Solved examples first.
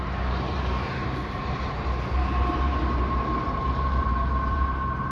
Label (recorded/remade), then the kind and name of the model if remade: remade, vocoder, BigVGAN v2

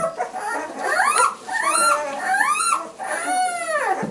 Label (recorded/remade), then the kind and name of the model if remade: recorded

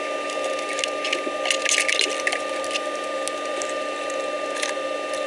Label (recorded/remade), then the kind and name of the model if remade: recorded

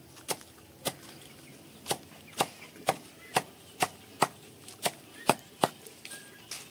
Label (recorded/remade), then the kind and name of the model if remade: recorded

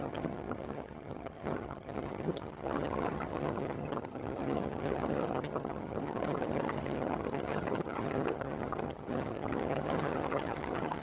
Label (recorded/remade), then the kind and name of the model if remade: remade, vocoder, HiFi-GAN